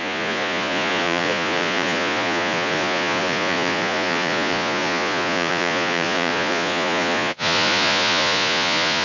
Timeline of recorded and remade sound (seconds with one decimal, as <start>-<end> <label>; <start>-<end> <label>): 0.0-9.0 remade